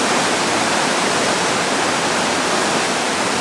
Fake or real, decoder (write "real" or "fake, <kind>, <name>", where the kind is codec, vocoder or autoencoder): real